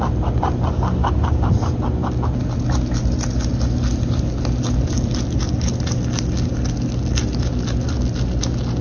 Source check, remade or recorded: recorded